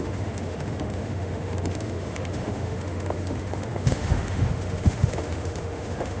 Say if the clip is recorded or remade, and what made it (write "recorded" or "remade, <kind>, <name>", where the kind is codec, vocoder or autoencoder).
remade, autoencoder, DAC-VAE